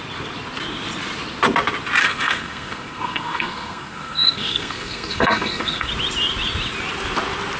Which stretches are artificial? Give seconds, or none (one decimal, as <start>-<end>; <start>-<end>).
2.0-5.9